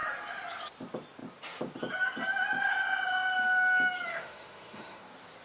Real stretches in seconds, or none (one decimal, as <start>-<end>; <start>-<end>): 0.0-4.1; 5.0-5.4